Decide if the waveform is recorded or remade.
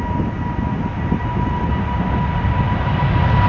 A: recorded